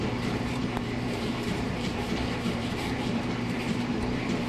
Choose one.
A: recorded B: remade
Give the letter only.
B